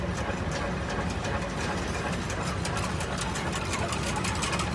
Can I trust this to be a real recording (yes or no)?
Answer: yes